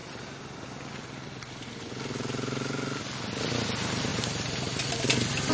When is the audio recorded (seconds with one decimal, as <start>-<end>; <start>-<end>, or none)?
0.0-4.1; 4.8-5.5

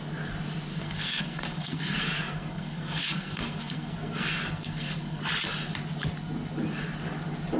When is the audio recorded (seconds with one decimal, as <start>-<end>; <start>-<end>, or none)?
0.0-0.7; 5.2-7.6

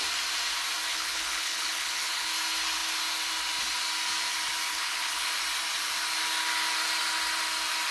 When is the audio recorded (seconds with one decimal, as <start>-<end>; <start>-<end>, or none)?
0.0-0.9; 2.3-4.7; 5.3-7.9

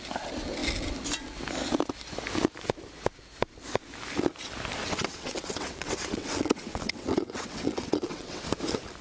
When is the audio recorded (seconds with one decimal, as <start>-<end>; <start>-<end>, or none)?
0.0-4.8; 8.4-9.0